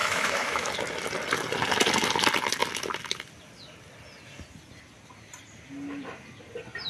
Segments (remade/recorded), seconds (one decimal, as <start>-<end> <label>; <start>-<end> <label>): 0.0-0.7 remade; 0.7-6.9 recorded